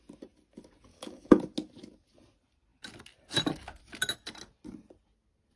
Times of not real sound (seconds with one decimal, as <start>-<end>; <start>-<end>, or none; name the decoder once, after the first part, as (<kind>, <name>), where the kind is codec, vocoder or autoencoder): 0.9-1.4 (autoencoder, DAC-VAE)